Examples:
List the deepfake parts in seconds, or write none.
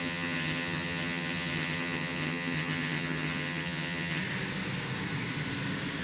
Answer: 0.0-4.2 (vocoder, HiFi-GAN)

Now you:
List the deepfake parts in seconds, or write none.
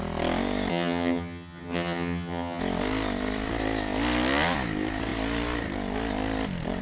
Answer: 0.7-2.6 (vocoder, HiFi-GAN)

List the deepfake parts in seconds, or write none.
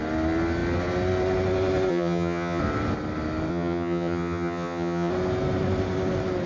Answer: 1.9-2.6 (vocoder, HiFi-GAN); 3.5-5.1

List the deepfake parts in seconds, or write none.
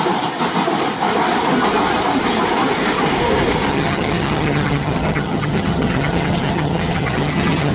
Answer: 3.7-7.7 (vocoder, HiFi-GAN)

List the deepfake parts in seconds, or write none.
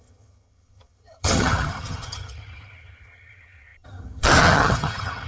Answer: 0.0-5.3 (vocoder, HiFi-GAN)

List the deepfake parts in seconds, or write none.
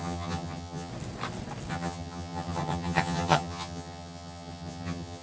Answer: 0.0-0.9 (vocoder, HiFi-GAN); 1.7-5.2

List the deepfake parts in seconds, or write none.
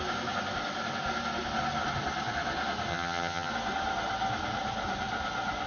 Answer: 2.9-3.5 (vocoder, HiFi-GAN)